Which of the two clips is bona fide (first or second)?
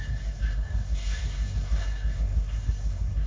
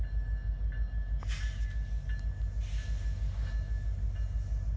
second